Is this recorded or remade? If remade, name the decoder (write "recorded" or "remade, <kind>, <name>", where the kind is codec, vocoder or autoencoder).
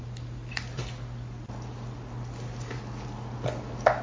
recorded